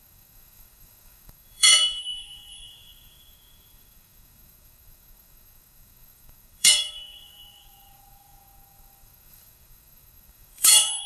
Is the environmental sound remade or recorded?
remade